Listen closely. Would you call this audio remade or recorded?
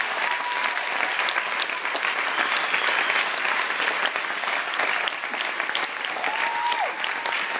recorded